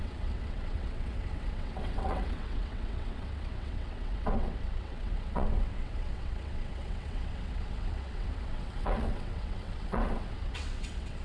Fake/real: fake